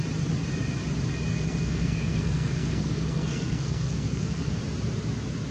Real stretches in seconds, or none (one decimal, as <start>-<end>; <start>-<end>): 0.0-1.3; 4.6-5.5